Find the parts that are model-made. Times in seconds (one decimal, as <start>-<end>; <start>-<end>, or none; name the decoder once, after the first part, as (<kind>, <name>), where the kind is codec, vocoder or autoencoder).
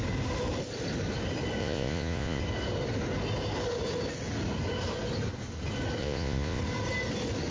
1.6-2.4 (vocoder, Vocos); 6.0-6.6